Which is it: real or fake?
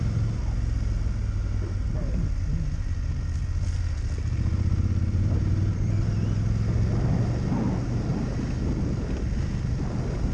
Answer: real